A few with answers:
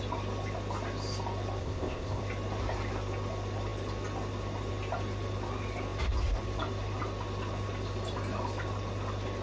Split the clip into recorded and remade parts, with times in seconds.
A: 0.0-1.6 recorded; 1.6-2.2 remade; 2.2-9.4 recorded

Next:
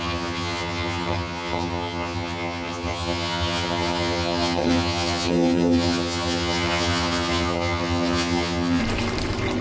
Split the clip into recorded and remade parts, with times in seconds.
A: 0.0-8.8 remade; 8.8-9.6 recorded

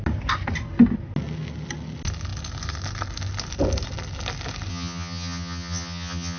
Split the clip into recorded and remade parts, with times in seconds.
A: 0.0-4.7 recorded; 4.7-6.4 remade

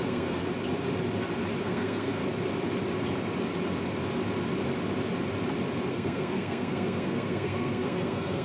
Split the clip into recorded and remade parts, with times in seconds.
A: 0.0-0.4 remade; 0.4-1.6 recorded; 1.6-2.2 remade; 2.2-5.9 recorded; 5.9-8.4 remade

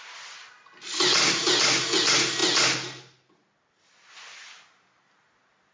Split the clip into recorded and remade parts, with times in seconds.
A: 0.0-5.7 recorded

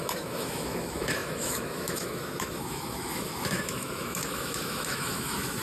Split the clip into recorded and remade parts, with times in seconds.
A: 0.0-5.6 remade